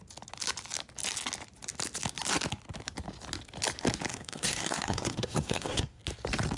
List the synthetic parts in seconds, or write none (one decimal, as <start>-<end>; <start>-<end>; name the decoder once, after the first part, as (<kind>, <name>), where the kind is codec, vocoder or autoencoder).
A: 4.1-6.0 (codec, SNAC)